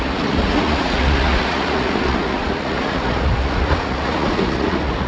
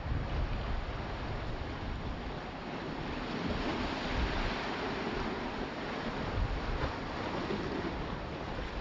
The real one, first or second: second